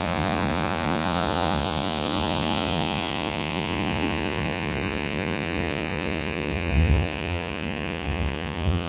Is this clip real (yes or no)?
no